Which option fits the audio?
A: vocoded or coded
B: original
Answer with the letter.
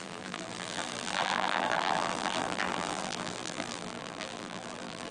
A